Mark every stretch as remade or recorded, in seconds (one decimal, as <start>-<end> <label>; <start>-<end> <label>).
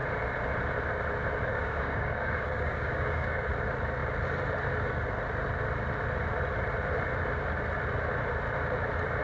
0.0-1.5 recorded; 1.5-3.5 remade; 3.5-9.2 recorded